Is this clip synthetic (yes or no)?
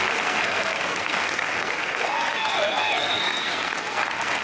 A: yes